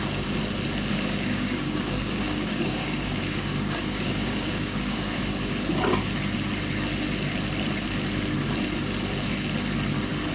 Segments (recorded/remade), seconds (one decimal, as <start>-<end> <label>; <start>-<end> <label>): 0.0-0.9 recorded; 0.9-5.2 remade; 5.2-10.3 recorded